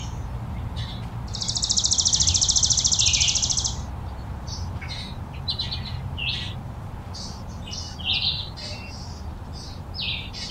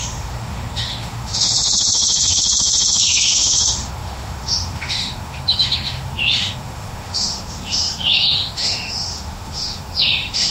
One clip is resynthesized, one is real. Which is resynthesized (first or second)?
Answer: second